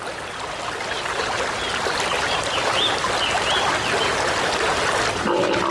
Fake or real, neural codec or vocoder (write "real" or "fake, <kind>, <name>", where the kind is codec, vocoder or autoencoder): real